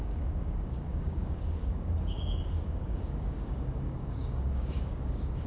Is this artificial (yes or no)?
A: yes